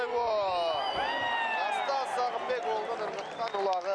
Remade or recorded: recorded